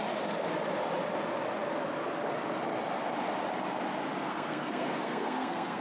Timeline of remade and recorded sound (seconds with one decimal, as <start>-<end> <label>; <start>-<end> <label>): 0.0-4.3 recorded; 4.3-5.8 remade